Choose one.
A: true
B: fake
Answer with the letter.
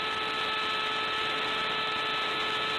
A